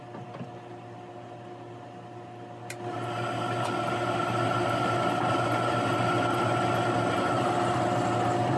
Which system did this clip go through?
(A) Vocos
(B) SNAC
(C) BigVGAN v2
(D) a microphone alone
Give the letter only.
D